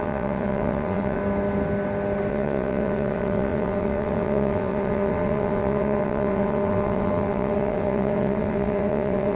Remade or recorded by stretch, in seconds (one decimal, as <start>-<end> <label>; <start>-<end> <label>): 0.0-1.2 remade; 1.2-2.3 recorded; 2.3-9.4 remade